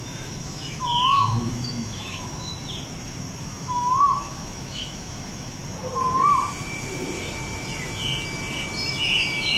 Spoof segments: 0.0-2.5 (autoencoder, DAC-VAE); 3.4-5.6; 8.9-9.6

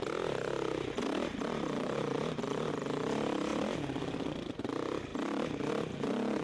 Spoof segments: none

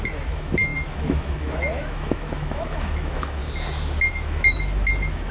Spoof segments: 0.0-3.4 (autoencoder, DAC-VAE); 4.1-5.3

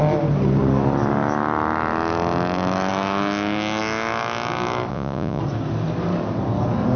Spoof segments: 4.9-5.4 (vocoder, Vocos)

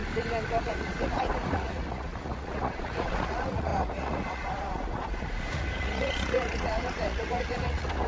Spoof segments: 0.6-8.1 (vocoder, Vocos)